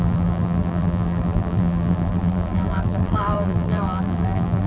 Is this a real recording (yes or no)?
no